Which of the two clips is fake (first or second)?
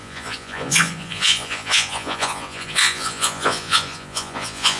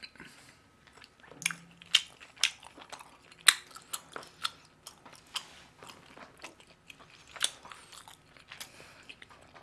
first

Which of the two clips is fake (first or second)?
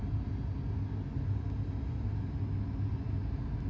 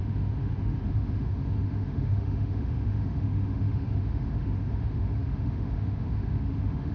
second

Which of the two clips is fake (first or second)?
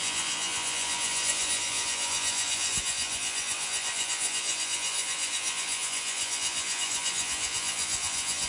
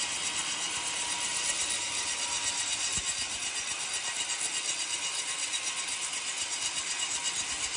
first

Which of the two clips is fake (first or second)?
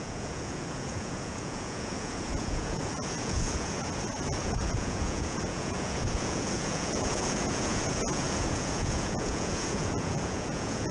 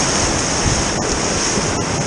first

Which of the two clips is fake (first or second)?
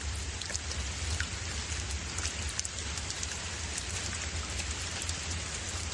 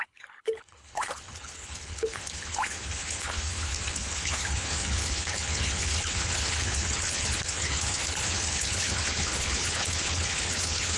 second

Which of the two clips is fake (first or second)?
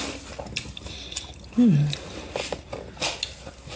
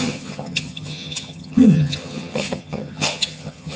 second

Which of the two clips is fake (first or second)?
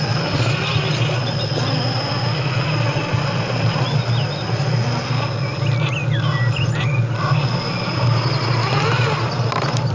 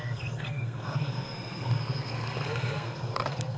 second